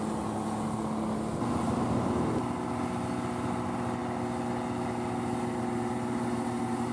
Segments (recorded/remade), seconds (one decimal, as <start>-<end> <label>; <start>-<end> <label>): 0.0-6.9 recorded